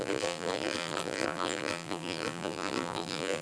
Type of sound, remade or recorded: remade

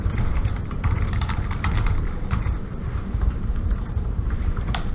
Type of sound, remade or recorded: remade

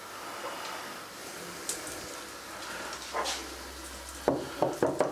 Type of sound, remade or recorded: recorded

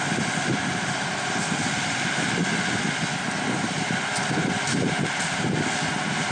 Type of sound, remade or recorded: recorded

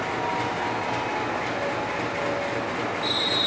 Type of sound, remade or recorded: recorded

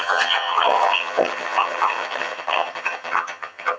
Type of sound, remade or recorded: remade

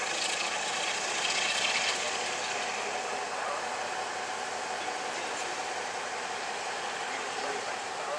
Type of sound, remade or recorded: recorded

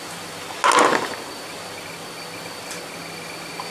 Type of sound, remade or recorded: recorded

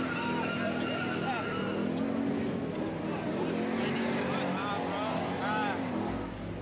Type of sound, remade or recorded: recorded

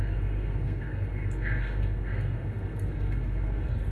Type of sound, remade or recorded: remade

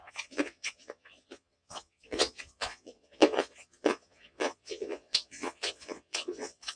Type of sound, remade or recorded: remade